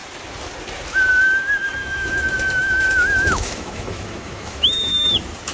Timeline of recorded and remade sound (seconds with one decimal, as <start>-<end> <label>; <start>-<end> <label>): 0.0-1.8 recorded; 1.8-5.1 remade; 5.1-5.5 recorded